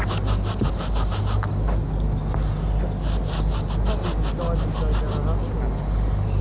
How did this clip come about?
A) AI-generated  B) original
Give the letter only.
B